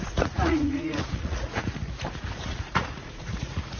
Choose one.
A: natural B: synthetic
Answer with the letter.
B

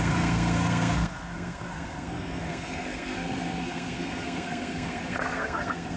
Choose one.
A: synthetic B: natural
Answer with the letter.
A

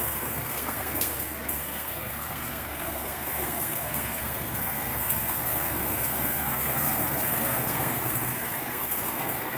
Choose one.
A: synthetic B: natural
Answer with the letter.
A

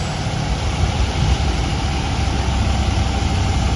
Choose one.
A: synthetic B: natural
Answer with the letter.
B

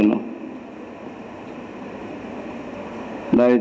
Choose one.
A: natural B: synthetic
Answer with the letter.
A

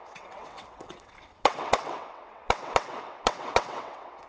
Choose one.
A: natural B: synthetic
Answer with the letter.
B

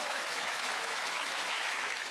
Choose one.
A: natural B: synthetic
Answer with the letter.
B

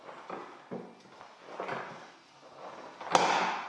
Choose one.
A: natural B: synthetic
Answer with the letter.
A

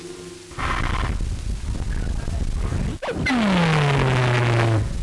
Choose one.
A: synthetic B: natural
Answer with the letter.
B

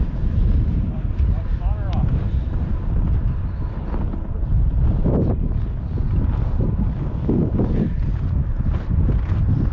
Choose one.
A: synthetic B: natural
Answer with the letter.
B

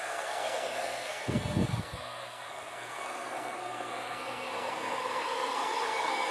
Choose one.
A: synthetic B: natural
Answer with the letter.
A